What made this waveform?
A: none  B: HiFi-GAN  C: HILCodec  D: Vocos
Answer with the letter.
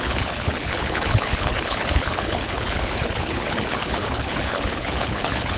C